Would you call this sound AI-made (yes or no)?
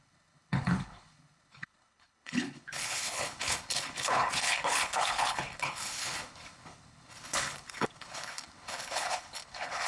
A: yes